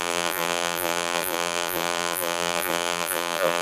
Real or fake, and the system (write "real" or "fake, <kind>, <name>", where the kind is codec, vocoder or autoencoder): fake, vocoder, BigVGAN v2